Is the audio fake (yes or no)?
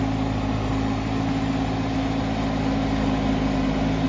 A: no